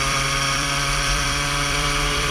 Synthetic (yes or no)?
yes